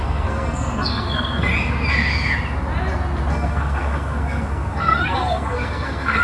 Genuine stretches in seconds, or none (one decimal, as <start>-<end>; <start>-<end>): 1.5-3.3